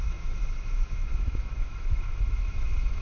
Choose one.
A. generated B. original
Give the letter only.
A